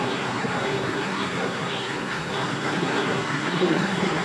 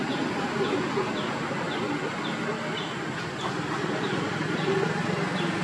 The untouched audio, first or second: second